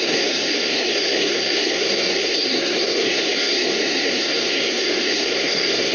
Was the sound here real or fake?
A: fake